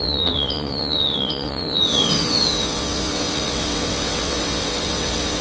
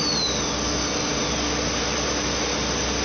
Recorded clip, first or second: second